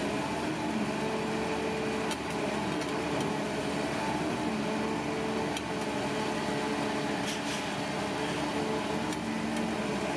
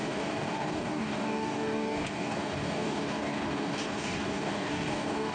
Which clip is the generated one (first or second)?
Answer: second